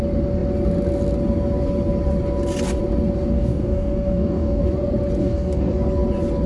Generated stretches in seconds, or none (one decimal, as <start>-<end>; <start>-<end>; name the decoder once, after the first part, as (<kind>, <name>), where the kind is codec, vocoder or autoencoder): 3.3-4.6 (codec, DAC); 5.2-5.7